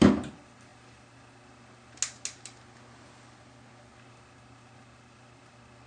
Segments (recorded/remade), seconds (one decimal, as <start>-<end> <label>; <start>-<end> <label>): 0.0-5.9 recorded